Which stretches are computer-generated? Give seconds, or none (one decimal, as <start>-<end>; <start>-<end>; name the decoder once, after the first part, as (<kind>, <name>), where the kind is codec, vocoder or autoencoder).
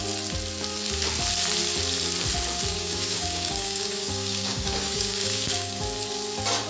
2.7-5.8 (codec, DAC)